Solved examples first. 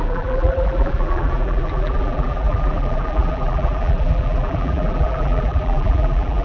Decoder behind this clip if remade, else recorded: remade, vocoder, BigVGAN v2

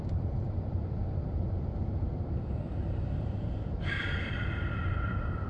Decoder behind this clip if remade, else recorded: remade, vocoder, BigVGAN v2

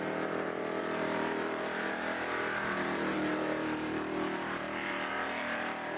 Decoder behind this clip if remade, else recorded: remade, vocoder, BigVGAN v2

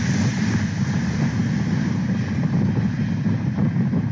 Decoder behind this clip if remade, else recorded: recorded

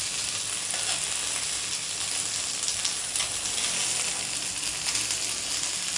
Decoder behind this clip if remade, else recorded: recorded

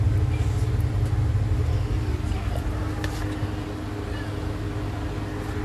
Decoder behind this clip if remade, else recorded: recorded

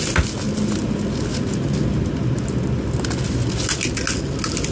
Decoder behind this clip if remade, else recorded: recorded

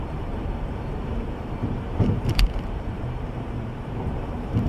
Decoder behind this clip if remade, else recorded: remade, vocoder, BigVGAN v2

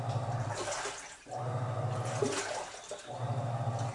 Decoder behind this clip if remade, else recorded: recorded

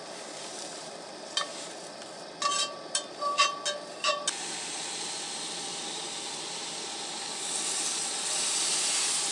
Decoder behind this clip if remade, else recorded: remade, vocoder, BigVGAN v2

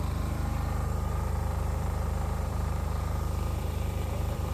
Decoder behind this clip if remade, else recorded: remade, vocoder, BigVGAN v2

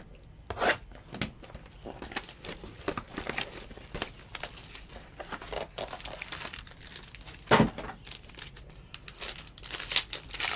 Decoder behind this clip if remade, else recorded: recorded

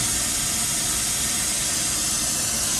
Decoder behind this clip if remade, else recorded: recorded